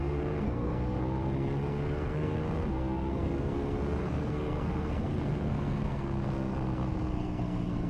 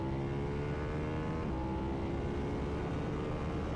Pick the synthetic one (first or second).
first